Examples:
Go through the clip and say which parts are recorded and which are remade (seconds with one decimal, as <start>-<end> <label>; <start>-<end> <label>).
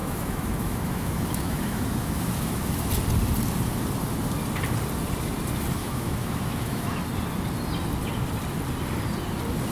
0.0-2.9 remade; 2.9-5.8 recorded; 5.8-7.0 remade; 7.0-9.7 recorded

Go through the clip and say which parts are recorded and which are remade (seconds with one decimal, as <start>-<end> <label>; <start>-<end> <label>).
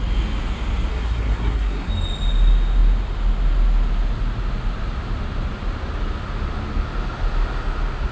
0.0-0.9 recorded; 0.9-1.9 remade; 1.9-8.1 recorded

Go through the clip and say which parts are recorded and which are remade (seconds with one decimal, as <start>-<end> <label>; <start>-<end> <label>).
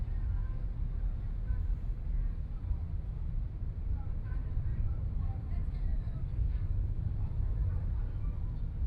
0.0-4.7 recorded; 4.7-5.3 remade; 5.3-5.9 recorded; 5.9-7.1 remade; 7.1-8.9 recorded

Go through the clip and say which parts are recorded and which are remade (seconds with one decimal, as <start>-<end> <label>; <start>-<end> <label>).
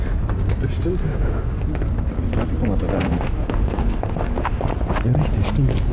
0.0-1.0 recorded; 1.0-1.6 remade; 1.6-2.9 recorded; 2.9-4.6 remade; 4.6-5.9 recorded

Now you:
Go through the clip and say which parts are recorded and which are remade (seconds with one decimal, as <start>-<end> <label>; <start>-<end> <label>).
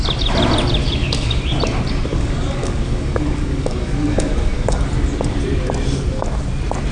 0.0-0.8 recorded; 0.8-1.4 remade; 1.4-2.1 recorded; 2.1-4.9 remade; 4.9-6.9 recorded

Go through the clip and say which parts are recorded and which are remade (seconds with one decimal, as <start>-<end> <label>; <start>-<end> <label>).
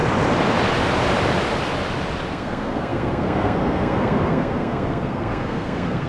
0.0-2.3 recorded; 2.3-6.1 remade